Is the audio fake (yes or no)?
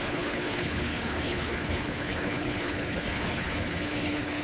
yes